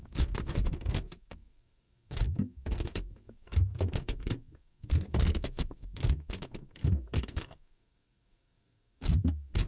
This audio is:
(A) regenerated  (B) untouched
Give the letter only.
A